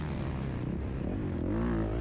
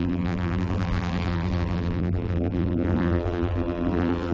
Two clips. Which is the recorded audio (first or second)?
first